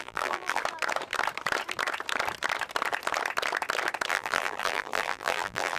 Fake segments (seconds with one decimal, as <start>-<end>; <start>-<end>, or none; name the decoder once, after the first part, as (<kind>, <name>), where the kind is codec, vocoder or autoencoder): 0.0-0.6 (vocoder, BigVGAN v2); 4.1-5.8